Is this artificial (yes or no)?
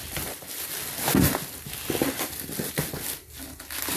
no